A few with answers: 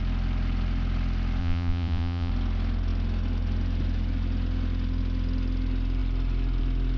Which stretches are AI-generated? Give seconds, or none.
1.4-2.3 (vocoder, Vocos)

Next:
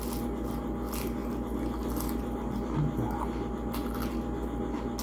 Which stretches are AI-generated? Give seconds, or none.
none

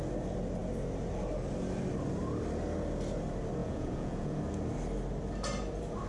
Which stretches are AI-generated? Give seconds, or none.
3.6-4.4 (vocoder, Vocos)

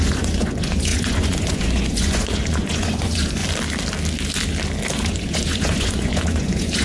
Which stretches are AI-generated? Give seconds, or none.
0.0-3.4 (vocoder, Vocos); 4.9-6.8

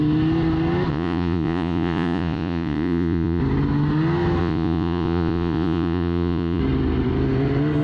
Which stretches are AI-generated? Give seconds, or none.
0.9-3.4 (vocoder, Vocos); 4.4-6.6